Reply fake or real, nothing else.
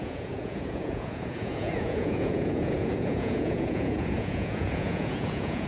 fake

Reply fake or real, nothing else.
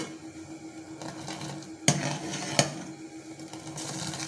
real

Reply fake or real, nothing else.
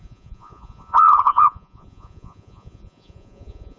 fake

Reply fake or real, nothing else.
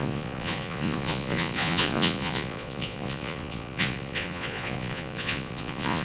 fake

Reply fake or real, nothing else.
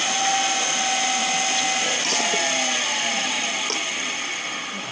real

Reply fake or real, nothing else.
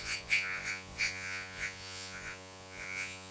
fake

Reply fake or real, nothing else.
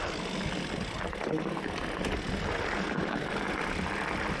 real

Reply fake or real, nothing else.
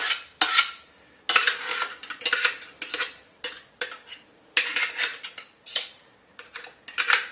real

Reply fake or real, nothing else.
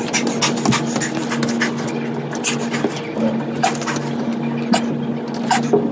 real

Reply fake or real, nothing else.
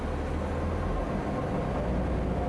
real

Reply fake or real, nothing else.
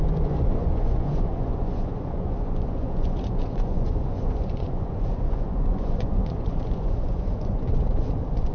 fake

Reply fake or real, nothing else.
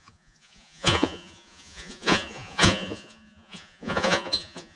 fake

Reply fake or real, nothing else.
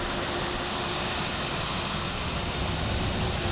real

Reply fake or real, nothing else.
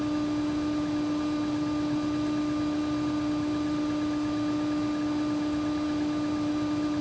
real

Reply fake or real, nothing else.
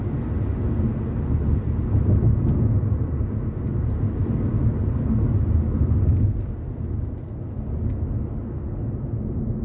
real